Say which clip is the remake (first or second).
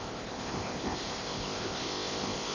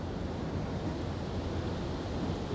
first